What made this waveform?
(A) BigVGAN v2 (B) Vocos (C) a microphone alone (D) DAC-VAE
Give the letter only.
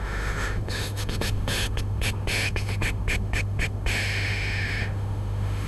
D